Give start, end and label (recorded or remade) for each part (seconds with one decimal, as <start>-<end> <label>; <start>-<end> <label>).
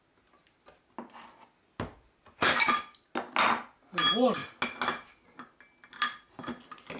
0.0-7.0 recorded